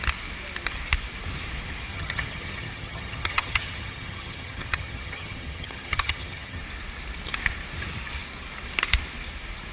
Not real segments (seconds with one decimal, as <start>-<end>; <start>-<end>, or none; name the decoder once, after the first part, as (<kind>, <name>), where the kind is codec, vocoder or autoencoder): 1.9-6.6 (vocoder, HiFi-GAN)